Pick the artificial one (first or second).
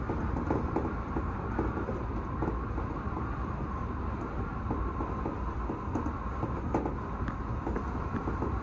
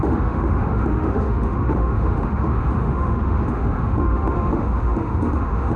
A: second